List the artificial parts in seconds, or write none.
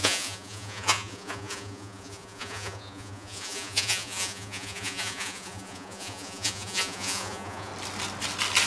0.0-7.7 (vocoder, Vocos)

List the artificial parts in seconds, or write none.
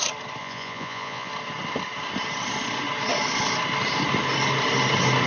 0.4-1.3 (vocoder, Vocos)